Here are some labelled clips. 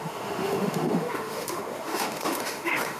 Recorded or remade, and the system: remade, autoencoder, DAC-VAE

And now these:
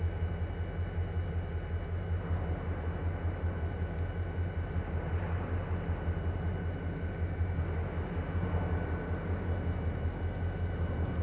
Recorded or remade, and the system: recorded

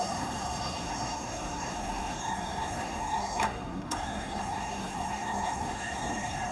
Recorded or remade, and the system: remade, codec, SNAC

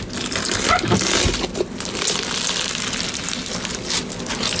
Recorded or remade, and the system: recorded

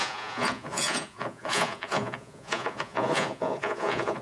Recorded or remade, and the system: remade, vocoder, Vocos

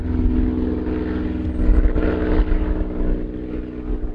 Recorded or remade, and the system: recorded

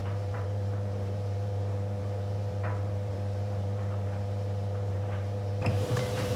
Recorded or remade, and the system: remade, vocoder, BigVGAN v2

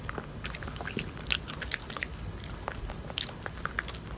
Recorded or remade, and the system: recorded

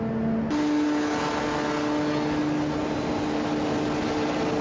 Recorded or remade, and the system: recorded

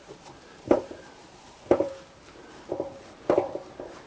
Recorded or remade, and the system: recorded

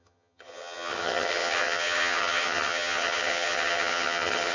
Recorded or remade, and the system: remade, vocoder, HiFi-GAN